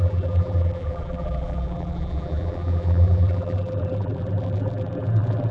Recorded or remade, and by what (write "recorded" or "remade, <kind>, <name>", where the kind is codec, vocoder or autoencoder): remade, vocoder, BigVGAN v2